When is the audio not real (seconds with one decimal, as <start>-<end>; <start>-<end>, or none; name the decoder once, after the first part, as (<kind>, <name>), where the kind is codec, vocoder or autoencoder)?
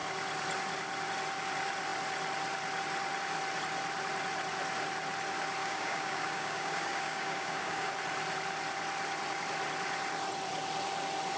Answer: 5.6-7.9 (codec, DAC)